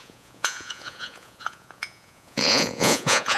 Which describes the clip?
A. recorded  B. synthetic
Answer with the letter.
B